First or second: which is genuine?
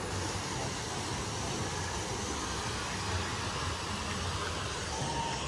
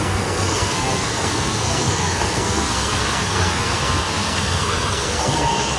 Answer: first